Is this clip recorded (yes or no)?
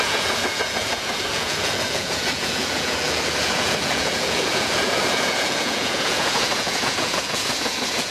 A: no